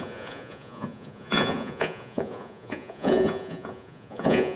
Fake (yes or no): yes